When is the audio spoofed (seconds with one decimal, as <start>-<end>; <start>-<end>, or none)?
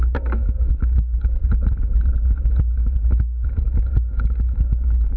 0.0-1.4; 3.6-5.2